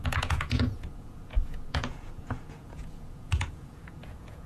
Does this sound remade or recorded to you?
remade